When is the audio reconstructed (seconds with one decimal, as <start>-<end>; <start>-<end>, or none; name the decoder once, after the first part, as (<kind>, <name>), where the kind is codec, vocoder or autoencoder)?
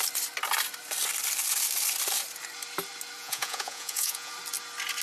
3.2-4.3 (vocoder, Vocos)